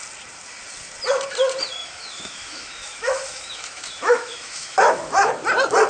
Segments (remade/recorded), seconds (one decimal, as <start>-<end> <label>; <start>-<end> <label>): 0.0-1.8 recorded; 1.8-5.3 remade; 5.3-5.9 recorded